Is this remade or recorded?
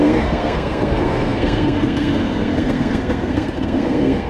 remade